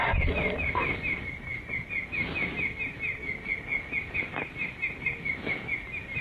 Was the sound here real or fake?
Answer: real